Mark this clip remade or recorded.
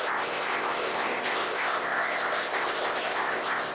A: remade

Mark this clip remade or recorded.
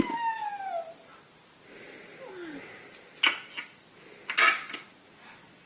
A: recorded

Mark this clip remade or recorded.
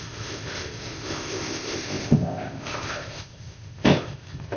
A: remade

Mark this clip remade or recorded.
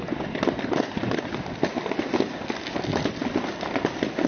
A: recorded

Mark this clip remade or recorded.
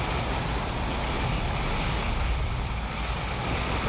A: recorded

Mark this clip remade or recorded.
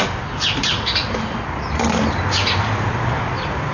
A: recorded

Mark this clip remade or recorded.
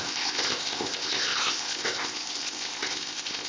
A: remade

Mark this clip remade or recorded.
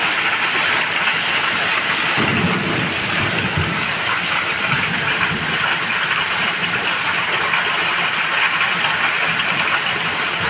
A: recorded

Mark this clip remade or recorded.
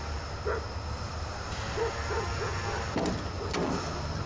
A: recorded